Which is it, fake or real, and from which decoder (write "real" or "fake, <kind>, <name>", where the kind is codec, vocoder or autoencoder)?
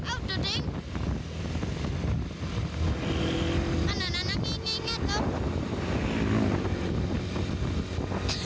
real